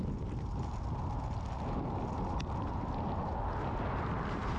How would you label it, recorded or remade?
recorded